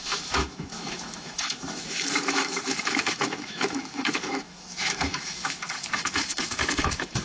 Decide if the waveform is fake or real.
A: fake